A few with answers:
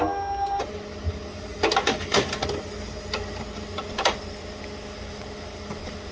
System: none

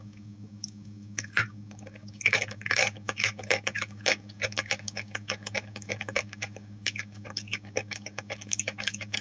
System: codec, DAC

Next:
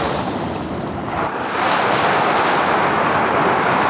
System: none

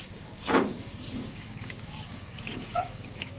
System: codec, DAC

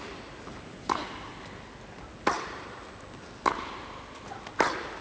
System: none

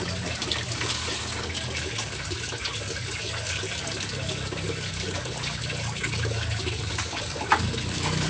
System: codec, DAC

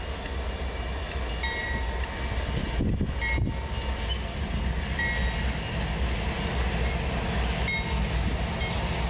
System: none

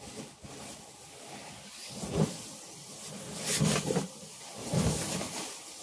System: none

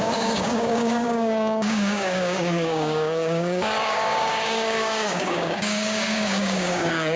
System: codec, DAC